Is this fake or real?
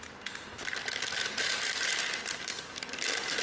real